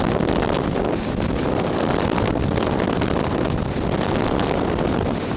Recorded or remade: remade